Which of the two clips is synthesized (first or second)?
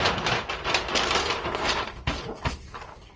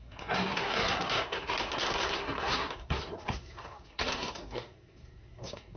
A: second